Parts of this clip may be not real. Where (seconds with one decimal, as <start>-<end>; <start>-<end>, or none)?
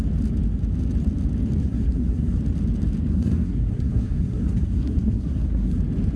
1.6-2.4; 3.1-5.8